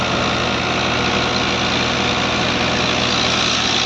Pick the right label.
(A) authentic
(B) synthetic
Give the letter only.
A